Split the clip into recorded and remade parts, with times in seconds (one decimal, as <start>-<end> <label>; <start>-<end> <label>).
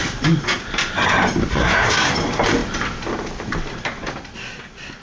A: 0.0-1.5 recorded; 1.5-2.1 remade; 2.1-5.0 recorded